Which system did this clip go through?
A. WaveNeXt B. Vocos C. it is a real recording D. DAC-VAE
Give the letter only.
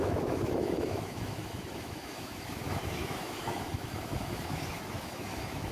D